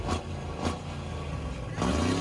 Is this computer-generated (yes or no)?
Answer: no